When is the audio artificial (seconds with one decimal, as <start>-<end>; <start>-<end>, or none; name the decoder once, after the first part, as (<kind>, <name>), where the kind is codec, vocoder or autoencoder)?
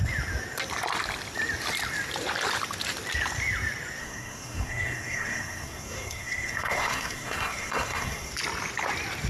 4.0-8.3 (codec, SNAC)